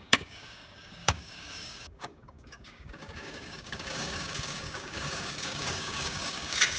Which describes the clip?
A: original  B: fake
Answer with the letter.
B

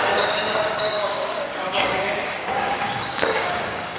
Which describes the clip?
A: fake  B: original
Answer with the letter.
A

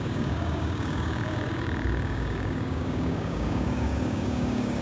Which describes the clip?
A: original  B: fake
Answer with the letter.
B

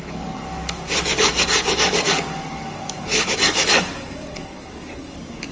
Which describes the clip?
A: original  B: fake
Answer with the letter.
B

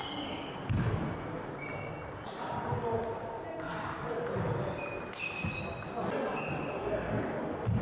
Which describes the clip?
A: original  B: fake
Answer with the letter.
A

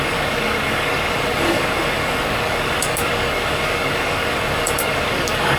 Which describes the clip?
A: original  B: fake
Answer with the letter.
B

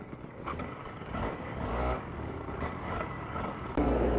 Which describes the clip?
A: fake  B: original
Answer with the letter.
A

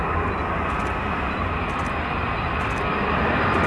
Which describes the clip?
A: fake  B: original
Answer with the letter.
B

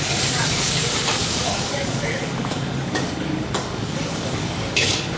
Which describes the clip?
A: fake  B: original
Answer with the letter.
A